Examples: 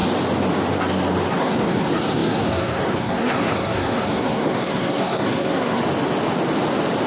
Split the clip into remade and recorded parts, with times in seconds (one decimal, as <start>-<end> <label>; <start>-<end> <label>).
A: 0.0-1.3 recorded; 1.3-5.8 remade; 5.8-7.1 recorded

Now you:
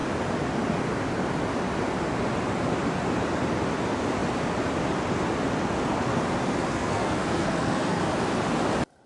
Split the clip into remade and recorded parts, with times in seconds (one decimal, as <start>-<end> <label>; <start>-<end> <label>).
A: 0.0-6.7 recorded; 6.7-8.0 remade; 8.0-9.1 recorded

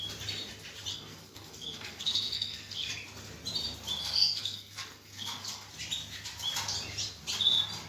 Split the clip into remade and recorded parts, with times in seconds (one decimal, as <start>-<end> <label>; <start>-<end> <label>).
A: 0.0-0.9 recorded; 0.9-2.9 remade; 2.9-4.0 recorded; 4.0-5.7 remade; 5.7-7.9 recorded